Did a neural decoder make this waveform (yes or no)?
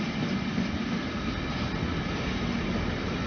no